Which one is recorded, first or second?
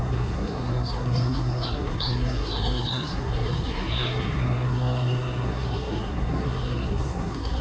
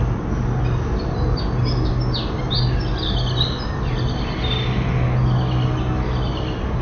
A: second